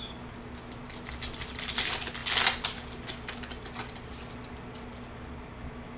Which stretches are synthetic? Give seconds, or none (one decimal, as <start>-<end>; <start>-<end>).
none